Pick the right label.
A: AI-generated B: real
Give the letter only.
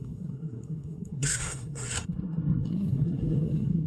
A